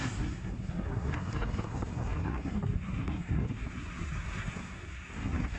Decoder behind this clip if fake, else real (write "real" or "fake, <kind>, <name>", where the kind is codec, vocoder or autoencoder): fake, codec, SNAC